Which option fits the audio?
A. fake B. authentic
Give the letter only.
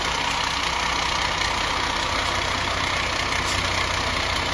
B